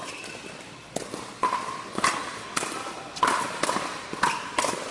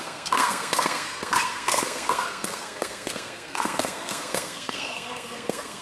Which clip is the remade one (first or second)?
second